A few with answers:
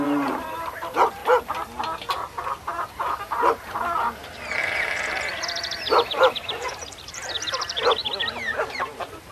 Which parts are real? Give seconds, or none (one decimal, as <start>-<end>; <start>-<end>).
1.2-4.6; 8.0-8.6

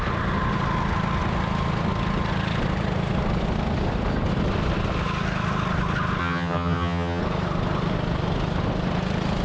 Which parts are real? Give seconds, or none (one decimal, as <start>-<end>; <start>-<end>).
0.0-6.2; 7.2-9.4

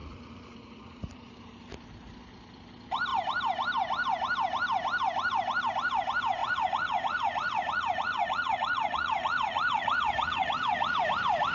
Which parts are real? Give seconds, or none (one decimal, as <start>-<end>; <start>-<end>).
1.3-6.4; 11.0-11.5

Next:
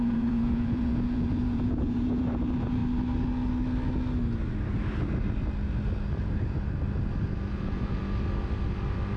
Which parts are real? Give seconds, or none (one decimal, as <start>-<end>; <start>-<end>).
2.8-7.5; 8.0-9.2

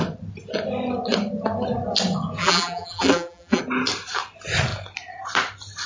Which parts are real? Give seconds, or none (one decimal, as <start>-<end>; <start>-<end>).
0.0-2.4; 3.6-5.9

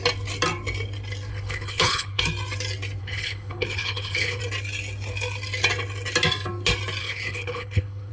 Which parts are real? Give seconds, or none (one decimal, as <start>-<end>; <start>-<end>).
0.0-1.3; 2.2-3.0; 4.4-7.0

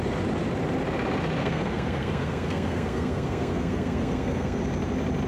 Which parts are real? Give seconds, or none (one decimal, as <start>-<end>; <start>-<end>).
0.0-1.4; 4.6-5.3

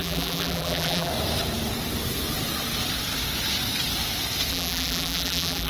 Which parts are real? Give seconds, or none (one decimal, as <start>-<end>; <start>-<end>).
1.1-4.5